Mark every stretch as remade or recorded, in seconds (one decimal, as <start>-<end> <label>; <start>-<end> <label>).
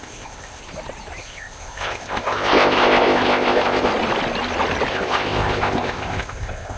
0.0-0.6 remade; 0.6-1.2 recorded; 1.2-3.9 remade; 3.9-4.9 recorded; 4.9-6.8 remade